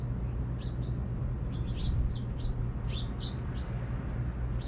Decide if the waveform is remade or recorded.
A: recorded